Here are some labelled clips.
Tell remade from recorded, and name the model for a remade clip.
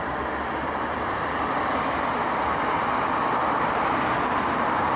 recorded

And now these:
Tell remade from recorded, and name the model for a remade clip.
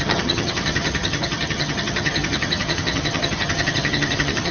remade, vocoder, HiFi-GAN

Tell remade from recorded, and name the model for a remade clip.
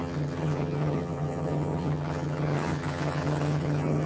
remade, vocoder, HiFi-GAN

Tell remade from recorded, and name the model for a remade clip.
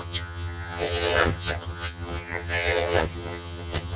remade, vocoder, HiFi-GAN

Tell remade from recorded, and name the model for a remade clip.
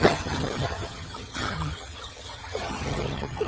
remade, vocoder, HiFi-GAN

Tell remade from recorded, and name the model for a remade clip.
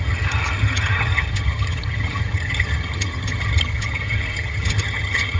remade, vocoder, HiFi-GAN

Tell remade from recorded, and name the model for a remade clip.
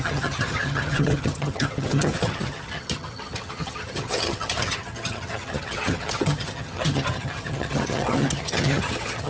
remade, vocoder, HiFi-GAN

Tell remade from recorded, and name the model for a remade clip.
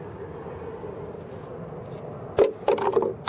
recorded